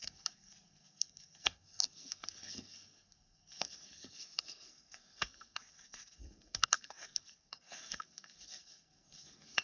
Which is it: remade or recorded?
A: remade